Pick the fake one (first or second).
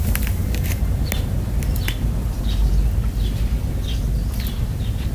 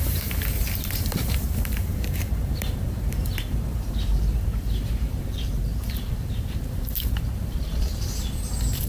second